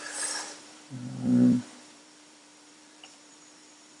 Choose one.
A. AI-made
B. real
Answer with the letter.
A